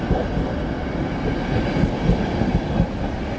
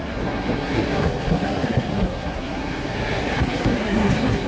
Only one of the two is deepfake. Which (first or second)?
second